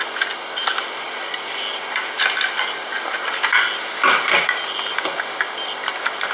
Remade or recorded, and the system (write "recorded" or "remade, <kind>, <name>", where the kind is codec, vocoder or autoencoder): recorded